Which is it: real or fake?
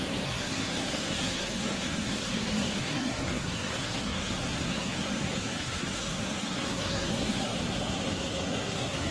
fake